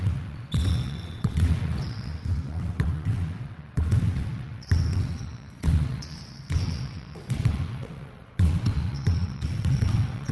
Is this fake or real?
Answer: fake